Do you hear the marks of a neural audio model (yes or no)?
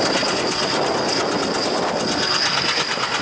no